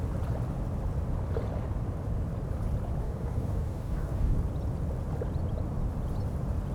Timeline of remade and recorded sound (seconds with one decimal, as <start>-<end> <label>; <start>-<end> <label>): 0.0-3.0 recorded; 3.0-4.4 remade; 4.4-6.7 recorded